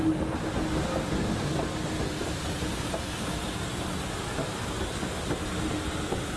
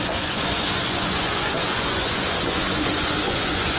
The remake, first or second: second